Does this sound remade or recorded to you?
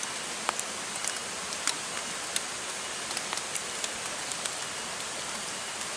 recorded